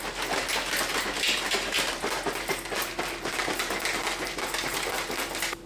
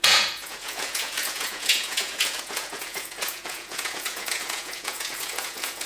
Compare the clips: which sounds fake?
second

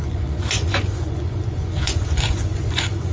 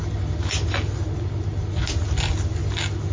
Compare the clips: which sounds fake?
first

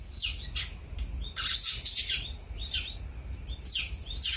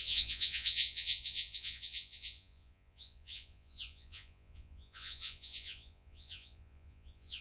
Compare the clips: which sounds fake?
second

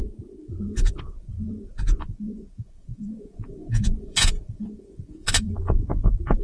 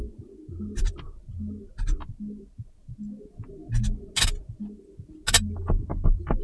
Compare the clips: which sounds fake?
first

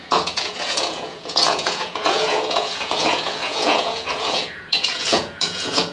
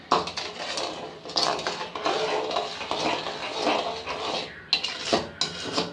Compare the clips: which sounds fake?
first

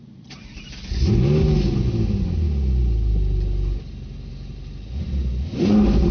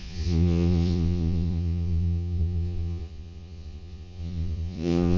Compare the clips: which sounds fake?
second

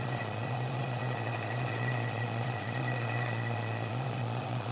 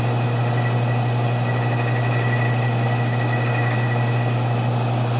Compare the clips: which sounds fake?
first